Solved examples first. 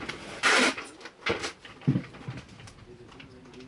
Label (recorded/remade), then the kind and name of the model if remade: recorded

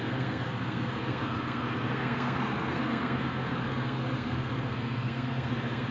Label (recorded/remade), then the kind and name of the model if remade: remade, codec, SNAC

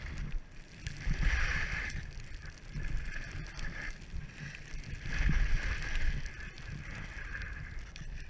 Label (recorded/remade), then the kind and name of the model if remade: recorded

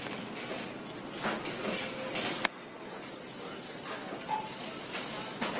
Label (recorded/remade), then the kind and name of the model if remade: recorded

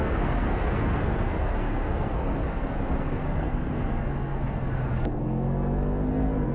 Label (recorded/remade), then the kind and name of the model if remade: remade, codec, SNAC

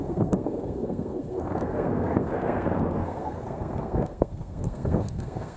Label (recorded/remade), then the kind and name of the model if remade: remade, codec, SNAC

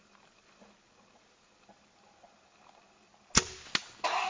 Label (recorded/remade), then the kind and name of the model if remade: recorded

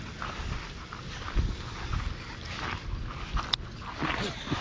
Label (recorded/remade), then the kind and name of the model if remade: recorded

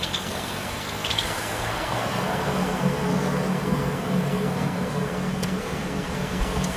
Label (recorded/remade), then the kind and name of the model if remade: remade, codec, SNAC